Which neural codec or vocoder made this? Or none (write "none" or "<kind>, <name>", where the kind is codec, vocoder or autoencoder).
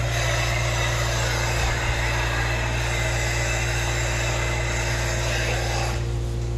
none